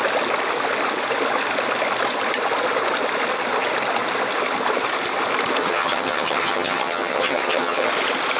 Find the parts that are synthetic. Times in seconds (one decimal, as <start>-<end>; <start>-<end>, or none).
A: 5.6-7.9